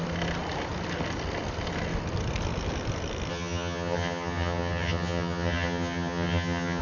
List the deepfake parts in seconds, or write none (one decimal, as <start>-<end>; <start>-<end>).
3.3-6.8